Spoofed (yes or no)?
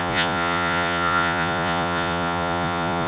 yes